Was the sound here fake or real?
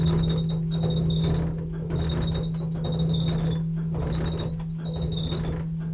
real